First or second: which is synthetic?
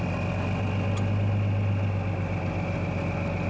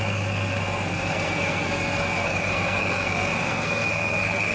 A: second